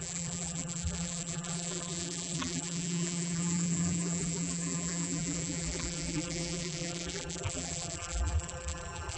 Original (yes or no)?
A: no